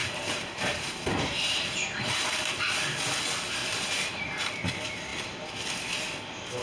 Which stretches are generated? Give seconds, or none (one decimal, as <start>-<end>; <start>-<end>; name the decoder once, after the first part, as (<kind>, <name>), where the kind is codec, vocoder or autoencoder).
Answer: 0.0-2.0 (vocoder, BigVGAN v2); 3.6-4.5